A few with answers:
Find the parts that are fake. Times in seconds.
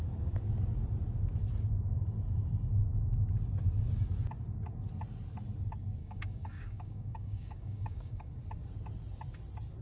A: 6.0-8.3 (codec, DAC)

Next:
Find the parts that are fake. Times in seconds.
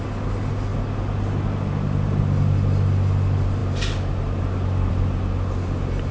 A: none